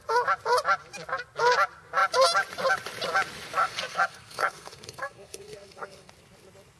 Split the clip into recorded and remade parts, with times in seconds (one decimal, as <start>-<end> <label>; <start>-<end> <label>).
0.0-3.6 recorded; 3.6-6.1 remade; 6.1-6.8 recorded